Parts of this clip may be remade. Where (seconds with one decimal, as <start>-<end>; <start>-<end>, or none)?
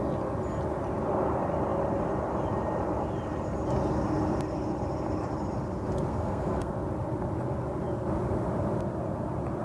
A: 6.1-6.7